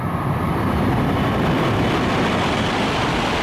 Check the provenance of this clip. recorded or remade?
recorded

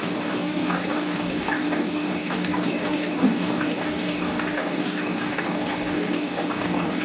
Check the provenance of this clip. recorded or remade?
remade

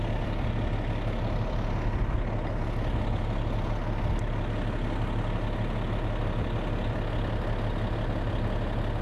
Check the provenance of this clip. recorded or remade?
recorded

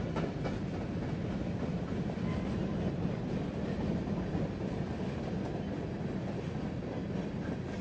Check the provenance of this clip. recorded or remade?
recorded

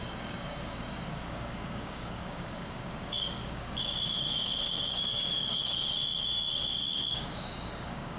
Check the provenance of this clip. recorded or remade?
remade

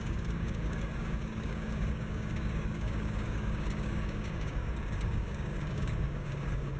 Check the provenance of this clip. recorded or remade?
remade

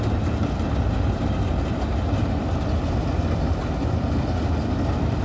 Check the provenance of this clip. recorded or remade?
recorded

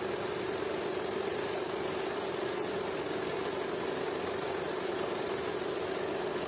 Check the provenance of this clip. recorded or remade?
recorded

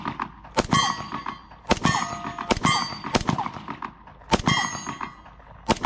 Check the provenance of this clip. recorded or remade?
recorded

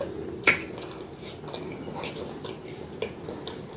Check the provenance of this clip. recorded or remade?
recorded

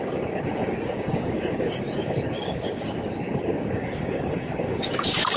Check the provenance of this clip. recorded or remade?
remade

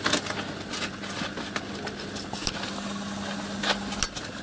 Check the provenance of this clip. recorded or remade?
recorded